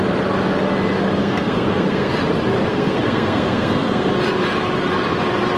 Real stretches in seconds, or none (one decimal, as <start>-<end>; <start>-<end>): 0.0-1.2; 2.1-2.7; 4.1-5.6